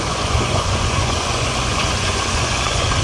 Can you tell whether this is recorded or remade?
remade